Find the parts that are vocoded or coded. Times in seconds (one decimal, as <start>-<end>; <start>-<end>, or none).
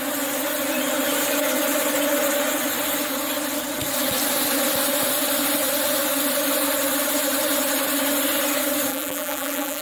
8.9-9.8